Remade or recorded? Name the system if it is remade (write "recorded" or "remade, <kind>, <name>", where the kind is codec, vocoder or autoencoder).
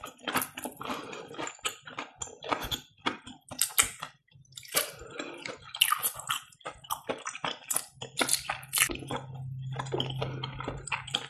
recorded